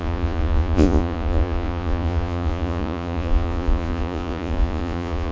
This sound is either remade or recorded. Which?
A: remade